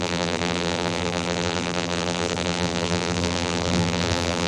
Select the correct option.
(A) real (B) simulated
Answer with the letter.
B